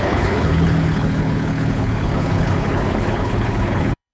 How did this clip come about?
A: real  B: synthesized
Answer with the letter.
B